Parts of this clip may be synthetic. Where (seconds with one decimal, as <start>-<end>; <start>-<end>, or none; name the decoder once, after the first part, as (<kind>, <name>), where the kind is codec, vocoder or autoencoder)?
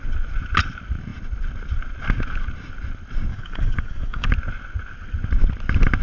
3.3-4.3 (codec, DAC)